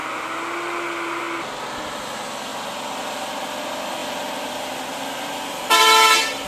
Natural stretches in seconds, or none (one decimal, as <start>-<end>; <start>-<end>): 0.0-6.5

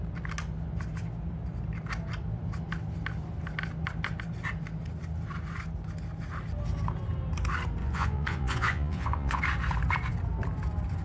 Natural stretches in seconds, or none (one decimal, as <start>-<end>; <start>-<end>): 0.0-7.8; 9.4-11.0

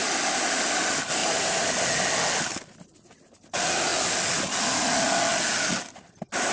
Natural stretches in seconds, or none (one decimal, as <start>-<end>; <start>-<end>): 0.0-1.2; 1.7-6.5

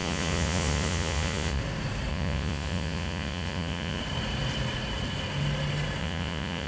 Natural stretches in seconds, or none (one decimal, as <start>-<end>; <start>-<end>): 1.6-2.1; 4.0-6.0

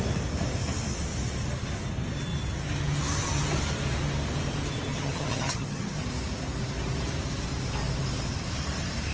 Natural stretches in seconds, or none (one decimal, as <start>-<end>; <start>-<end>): 0.0-4.9; 6.0-9.1

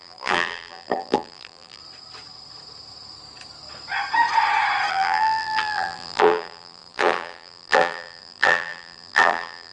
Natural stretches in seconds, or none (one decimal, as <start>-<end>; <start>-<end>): 1.8-4.9